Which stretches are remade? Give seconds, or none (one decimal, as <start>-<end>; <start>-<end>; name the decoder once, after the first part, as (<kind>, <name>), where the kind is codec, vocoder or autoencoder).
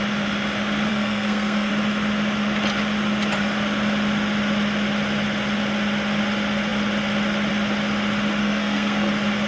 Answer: 0.9-1.7 (codec, SNAC); 8.4-9.1